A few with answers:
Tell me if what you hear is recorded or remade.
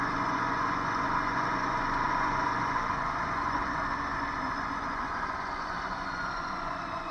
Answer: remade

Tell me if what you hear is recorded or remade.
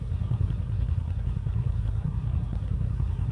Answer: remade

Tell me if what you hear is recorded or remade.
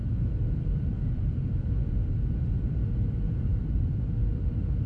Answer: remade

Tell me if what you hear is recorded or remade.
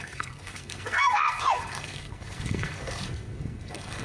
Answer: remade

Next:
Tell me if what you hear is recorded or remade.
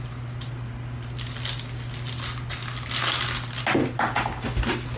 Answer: recorded